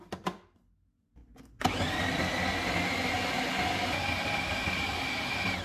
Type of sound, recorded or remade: recorded